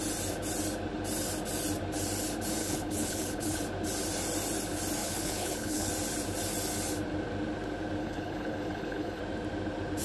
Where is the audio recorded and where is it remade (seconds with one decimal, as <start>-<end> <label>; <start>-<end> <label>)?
0.0-2.6 recorded; 2.6-3.6 remade; 3.6-5.0 recorded; 5.0-5.9 remade; 5.9-8.0 recorded; 8.0-9.2 remade; 9.2-10.0 recorded